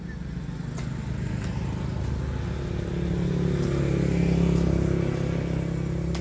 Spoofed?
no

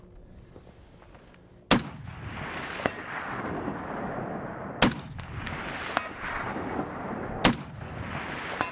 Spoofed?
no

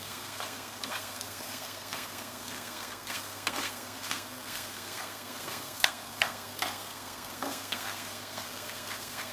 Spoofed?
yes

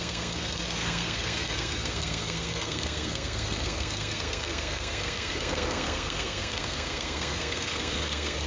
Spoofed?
yes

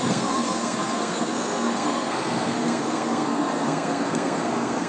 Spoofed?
yes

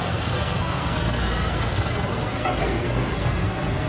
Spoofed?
yes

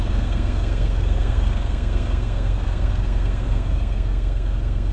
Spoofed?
yes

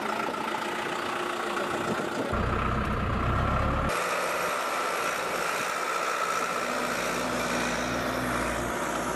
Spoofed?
no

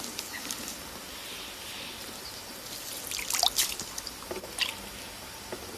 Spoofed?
no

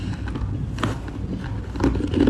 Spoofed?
no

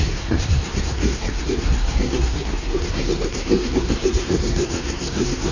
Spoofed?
yes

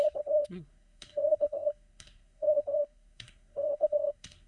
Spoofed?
yes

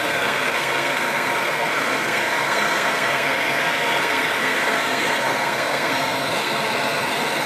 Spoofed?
yes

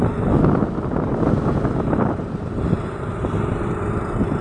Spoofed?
no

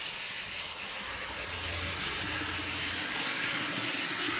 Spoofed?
no